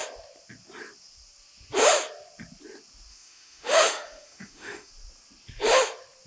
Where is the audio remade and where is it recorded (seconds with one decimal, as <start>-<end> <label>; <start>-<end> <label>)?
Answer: 0.0-3.1 recorded; 3.1-4.9 remade; 4.9-6.3 recorded